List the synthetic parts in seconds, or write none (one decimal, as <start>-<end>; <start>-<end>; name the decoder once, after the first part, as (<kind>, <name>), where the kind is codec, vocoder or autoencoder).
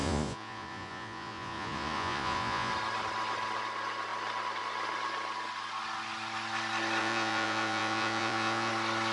0.0-2.7 (vocoder, Vocos); 7.0-8.7